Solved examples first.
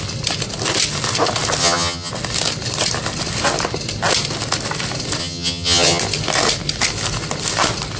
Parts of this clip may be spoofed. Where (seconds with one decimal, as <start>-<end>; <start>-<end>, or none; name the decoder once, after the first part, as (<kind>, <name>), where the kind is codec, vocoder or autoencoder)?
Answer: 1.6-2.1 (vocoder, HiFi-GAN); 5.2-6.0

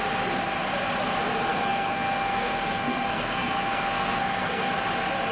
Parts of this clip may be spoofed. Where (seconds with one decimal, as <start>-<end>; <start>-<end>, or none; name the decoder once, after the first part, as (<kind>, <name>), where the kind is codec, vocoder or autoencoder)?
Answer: 1.5-4.7 (codec, SNAC)

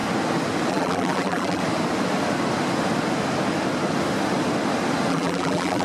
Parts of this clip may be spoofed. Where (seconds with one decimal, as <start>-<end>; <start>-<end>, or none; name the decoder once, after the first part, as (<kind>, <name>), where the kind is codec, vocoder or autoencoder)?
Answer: 0.7-1.6 (vocoder, BigVGAN v2); 5.1-5.8